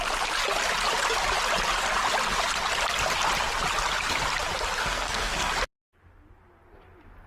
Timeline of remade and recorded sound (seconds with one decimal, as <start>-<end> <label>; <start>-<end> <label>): 0.0-4.8 recorded; 4.8-5.5 remade; 5.5-7.3 recorded